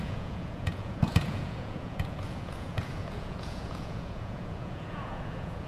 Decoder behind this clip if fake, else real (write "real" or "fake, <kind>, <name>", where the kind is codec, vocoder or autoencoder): fake, vocoder, Vocos